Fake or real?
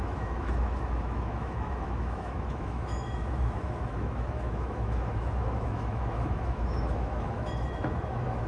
fake